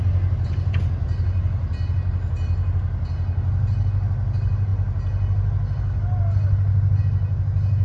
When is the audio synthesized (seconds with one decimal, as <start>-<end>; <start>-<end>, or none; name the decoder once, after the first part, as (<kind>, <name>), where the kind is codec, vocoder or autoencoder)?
none